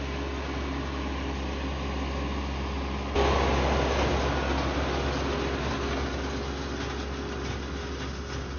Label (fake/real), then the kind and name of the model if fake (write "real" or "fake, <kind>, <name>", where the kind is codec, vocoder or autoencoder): real